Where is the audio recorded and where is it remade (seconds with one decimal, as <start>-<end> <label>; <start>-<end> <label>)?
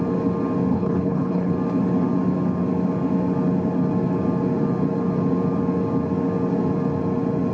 0.0-0.7 recorded; 0.7-1.5 remade; 1.5-7.5 recorded